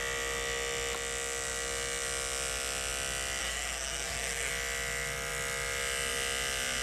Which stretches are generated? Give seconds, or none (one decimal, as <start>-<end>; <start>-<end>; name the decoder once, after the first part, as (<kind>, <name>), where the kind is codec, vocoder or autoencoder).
3.4-4.5 (codec, SNAC)

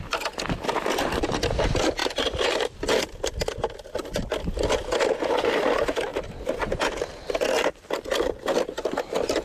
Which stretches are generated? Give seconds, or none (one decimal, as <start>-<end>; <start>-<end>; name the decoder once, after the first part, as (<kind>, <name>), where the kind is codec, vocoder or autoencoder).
2.0-2.5 (vocoder, BigVGAN v2); 6.1-6.8